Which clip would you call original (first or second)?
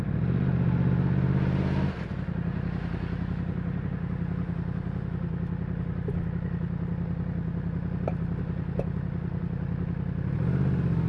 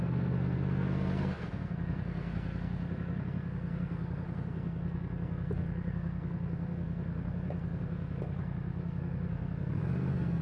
first